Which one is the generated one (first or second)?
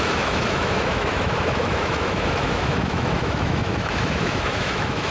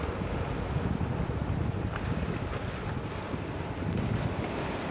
first